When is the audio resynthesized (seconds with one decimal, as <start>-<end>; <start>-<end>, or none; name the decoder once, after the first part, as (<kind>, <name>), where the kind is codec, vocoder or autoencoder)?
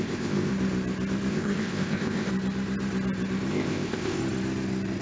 0.0-0.5 (codec, ZipCodec); 1.3-2.3; 3.5-4.2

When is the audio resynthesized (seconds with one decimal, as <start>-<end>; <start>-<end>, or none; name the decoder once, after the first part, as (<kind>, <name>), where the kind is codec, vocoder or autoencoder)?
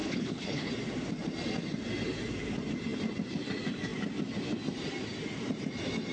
0.0-0.7 (codec, HILCodec)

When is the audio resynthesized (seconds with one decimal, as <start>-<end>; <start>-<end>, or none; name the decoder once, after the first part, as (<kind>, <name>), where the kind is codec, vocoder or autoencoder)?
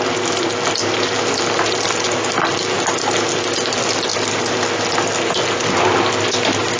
none